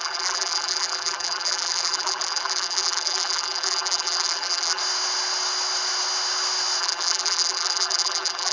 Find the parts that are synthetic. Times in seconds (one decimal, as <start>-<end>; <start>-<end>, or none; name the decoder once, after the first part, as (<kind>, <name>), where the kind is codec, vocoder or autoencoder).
0.0-4.8 (vocoder, BigVGAN v2); 6.8-8.5